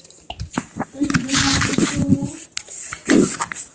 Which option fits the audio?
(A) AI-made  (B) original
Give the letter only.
B